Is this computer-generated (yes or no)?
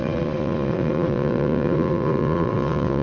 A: yes